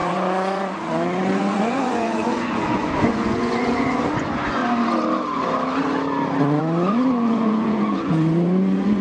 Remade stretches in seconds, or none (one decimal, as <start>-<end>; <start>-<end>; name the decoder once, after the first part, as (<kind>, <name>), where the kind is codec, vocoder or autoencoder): 0.0-4.6 (vocoder, Vocos); 6.6-9.0